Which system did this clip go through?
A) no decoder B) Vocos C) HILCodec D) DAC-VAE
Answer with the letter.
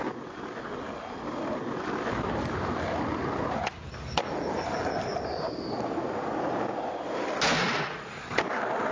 A